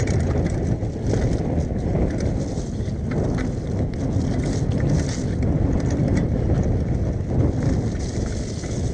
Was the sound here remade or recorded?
recorded